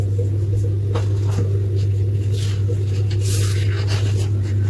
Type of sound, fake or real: real